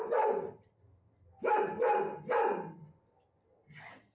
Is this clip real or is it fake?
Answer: real